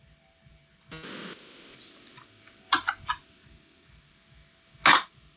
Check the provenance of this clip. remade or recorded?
recorded